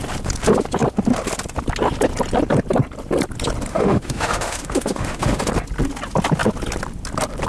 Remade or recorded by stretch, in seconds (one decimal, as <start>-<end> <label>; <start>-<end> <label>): 0.0-3.7 recorded; 3.7-5.4 remade; 5.4-7.5 recorded